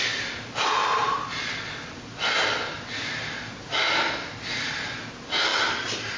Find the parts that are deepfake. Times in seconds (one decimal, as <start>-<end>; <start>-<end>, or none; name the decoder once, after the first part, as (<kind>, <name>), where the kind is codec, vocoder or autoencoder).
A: none